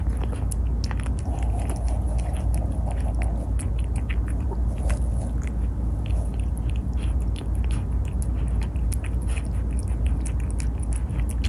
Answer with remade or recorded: recorded